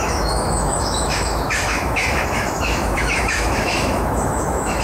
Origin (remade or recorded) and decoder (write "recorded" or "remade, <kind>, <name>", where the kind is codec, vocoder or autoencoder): remade, autoencoder, DAC-VAE